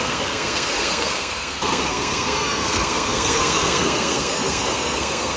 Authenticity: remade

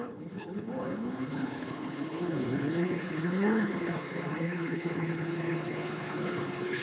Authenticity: remade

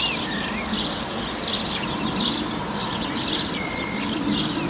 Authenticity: recorded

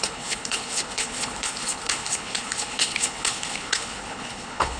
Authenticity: remade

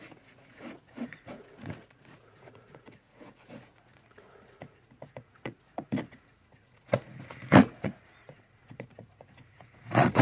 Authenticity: remade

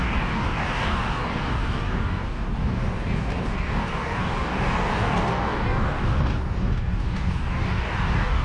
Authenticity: remade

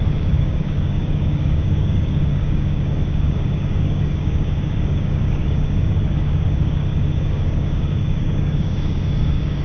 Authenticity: remade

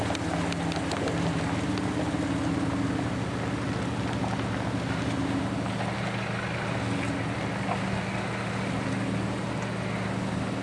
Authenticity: recorded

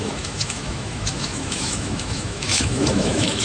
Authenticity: remade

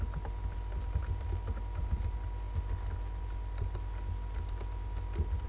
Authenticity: recorded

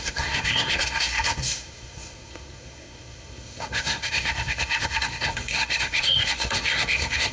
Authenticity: remade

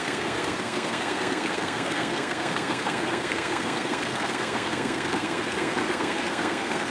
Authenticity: remade